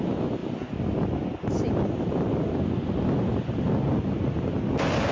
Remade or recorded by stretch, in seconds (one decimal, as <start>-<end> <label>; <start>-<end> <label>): 0.0-5.1 recorded